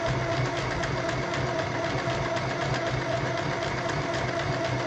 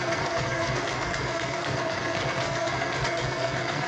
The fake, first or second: second